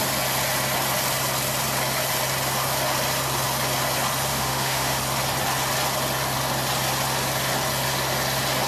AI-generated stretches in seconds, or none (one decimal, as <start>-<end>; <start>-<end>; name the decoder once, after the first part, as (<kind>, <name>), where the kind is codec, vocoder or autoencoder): 4.3-5.0 (autoencoder, DAC-VAE)